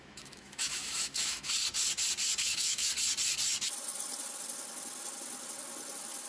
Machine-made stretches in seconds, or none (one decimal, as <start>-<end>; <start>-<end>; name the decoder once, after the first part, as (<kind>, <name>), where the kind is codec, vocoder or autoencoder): 0.0-1.5 (autoencoder, DAC-VAE); 2.4-2.9